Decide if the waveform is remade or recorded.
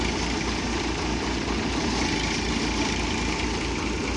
recorded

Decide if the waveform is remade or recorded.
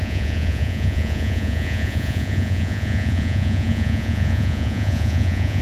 remade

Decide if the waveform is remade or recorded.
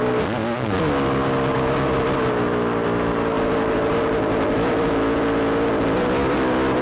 recorded